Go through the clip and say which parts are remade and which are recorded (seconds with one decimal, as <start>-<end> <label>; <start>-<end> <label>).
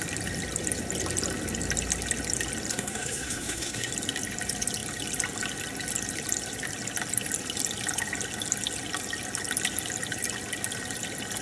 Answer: 0.0-2.7 recorded; 2.7-3.9 remade; 3.9-11.4 recorded